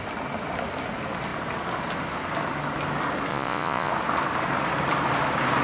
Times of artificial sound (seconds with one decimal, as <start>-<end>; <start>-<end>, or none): 3.3-3.9